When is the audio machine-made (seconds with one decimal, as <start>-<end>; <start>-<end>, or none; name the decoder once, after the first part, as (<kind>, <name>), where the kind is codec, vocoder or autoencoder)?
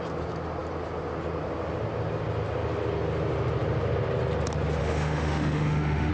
4.8-6.1 (autoencoder, DAC-VAE)